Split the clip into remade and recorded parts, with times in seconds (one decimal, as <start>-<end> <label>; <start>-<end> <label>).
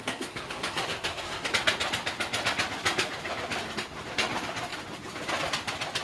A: 0.0-1.5 remade; 1.5-6.0 recorded